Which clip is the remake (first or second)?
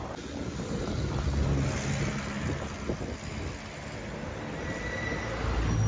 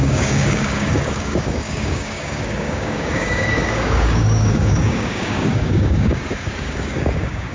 second